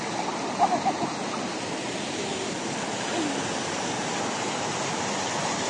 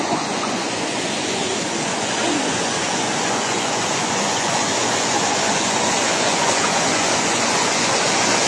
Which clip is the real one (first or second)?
first